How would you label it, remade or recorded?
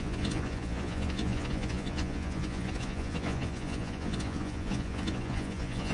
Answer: remade